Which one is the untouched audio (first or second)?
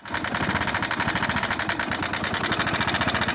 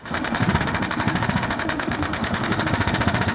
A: first